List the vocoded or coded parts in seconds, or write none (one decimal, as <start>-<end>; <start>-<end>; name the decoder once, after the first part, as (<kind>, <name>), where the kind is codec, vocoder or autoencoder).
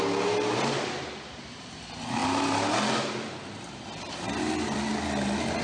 none